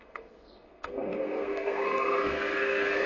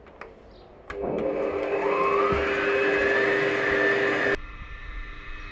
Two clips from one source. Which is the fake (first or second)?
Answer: first